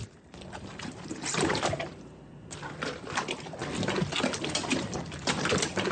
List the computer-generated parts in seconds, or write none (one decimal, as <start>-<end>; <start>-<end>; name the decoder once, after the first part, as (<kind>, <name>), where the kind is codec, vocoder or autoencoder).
0.0-3.6 (vocoder, BigVGAN v2); 4.7-5.9